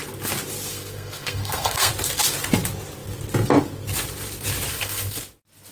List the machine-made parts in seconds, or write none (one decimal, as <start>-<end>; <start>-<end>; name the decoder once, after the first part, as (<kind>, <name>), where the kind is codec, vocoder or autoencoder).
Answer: 0.7-1.9 (codec, SNAC); 4.7-5.2